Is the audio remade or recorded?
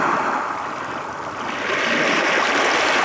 recorded